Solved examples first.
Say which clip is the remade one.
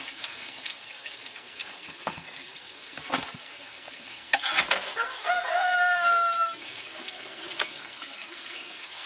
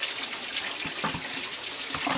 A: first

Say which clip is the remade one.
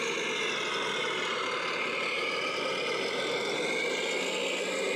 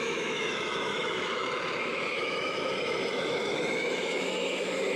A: second